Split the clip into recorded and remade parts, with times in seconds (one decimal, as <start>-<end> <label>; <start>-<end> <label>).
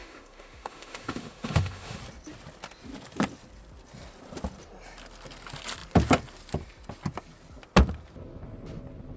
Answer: 0.0-2.0 remade; 2.0-9.2 recorded